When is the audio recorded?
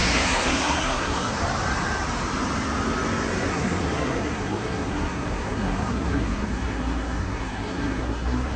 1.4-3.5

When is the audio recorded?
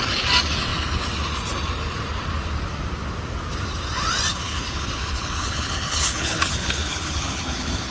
0.0-4.3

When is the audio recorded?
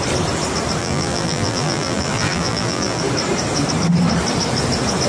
0.0-0.8; 3.0-5.1